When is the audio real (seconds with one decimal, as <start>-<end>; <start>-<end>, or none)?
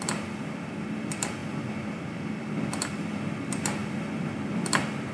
1.4-2.4